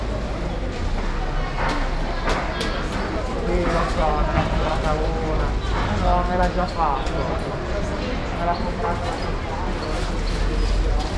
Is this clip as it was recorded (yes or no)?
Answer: yes